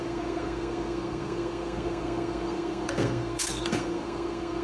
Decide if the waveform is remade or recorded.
remade